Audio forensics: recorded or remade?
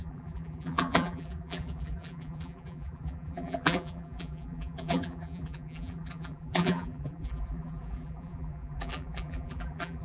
remade